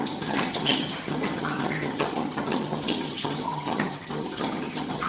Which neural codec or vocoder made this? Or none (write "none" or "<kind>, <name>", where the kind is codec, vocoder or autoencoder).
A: vocoder, HiFi-GAN